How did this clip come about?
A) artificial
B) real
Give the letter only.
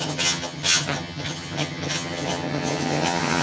A